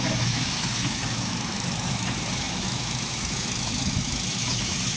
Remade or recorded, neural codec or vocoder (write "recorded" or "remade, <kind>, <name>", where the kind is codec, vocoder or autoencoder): remade, autoencoder, DAC-VAE